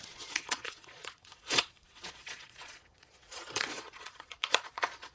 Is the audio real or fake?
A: fake